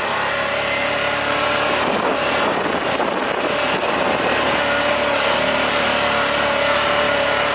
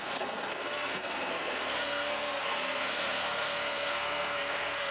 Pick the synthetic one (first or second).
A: second